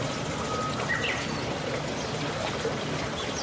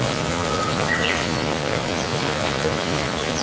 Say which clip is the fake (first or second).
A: second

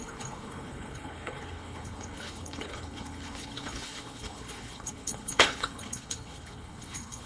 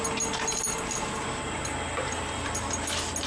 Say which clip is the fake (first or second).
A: first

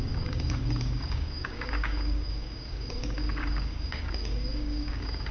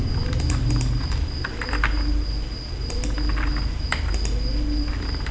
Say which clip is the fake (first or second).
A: first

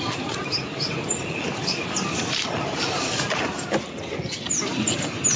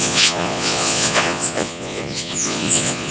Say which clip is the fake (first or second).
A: second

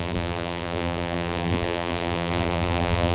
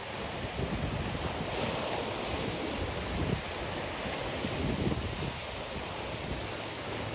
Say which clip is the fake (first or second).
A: first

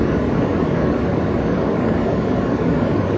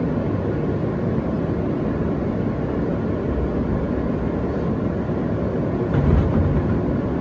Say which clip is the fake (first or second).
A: first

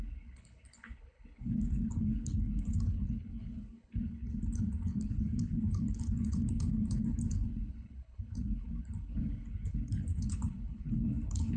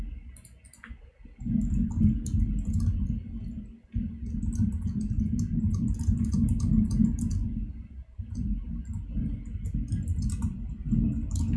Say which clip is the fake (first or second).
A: first